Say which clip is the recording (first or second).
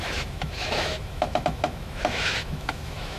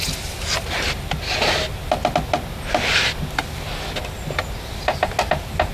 second